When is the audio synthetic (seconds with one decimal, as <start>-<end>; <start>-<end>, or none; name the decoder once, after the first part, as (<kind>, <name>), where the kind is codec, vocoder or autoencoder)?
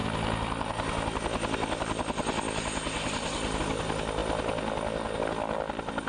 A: none